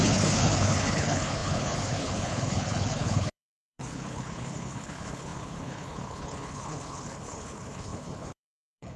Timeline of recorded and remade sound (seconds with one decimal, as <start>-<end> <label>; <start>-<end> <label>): 0.0-9.0 remade